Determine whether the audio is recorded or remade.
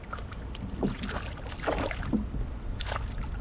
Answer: recorded